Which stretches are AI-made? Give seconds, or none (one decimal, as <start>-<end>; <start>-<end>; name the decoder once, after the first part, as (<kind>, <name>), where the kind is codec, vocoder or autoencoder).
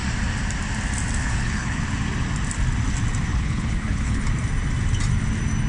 1.2-1.8 (codec, HILCodec); 3.3-4.2